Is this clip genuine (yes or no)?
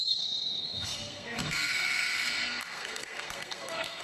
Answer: no